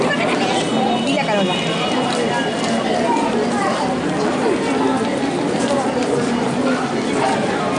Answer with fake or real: real